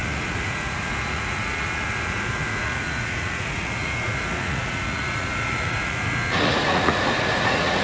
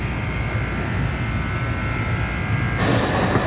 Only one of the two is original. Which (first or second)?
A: second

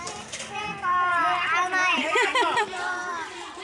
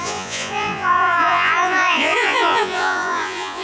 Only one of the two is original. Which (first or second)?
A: first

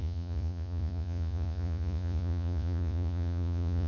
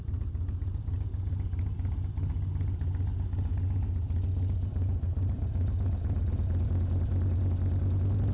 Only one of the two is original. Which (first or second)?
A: second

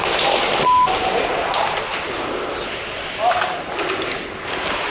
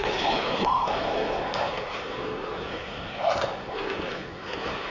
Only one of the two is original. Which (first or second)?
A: first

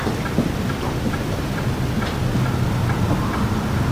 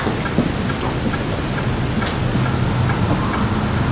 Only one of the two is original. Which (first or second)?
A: second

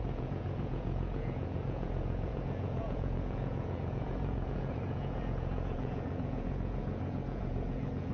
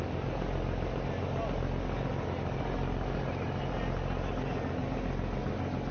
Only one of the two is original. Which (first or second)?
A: second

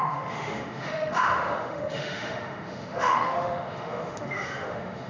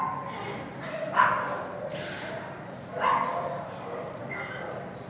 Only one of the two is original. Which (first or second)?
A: second